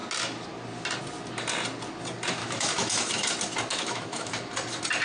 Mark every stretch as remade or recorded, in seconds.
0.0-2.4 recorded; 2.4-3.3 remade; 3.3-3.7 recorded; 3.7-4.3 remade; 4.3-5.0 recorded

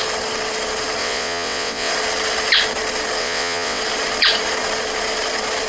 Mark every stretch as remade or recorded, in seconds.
0.0-1.0 recorded; 1.0-1.9 remade; 1.9-3.2 recorded; 3.2-3.8 remade; 3.8-5.7 recorded

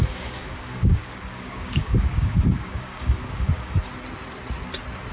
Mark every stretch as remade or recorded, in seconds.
0.0-3.9 remade; 3.9-5.1 recorded

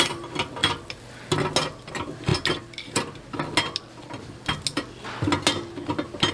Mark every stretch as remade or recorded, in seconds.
0.0-6.3 recorded